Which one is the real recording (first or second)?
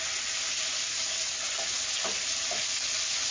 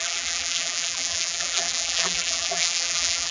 first